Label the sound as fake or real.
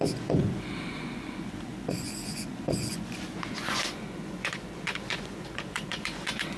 fake